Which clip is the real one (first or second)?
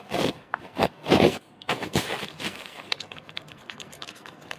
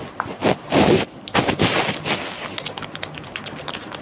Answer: second